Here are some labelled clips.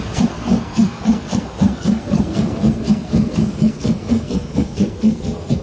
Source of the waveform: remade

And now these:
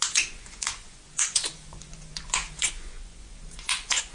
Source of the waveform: remade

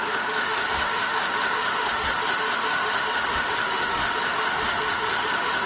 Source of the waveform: remade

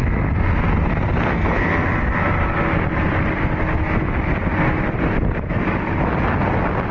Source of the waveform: recorded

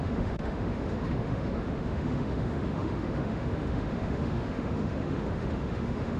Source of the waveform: remade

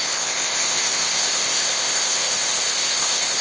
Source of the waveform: remade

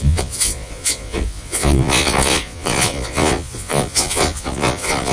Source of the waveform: remade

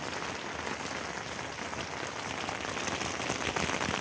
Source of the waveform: recorded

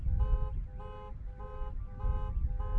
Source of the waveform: recorded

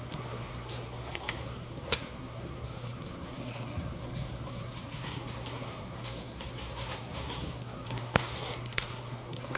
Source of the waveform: remade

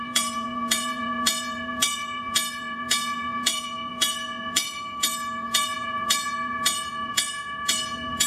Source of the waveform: remade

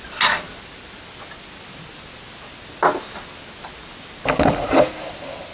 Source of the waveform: recorded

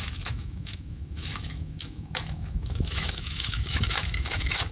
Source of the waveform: remade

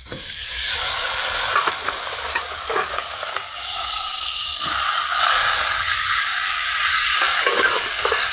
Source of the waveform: remade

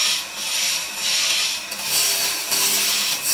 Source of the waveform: recorded